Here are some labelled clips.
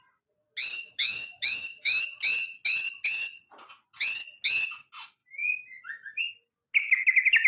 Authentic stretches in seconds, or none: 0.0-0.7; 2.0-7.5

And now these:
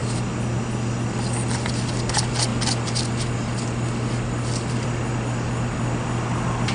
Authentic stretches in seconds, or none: 0.0-6.7